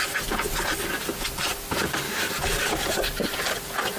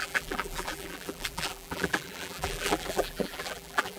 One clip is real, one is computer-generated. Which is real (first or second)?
first